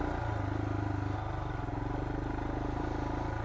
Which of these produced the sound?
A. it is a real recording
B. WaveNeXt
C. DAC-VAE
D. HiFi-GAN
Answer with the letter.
A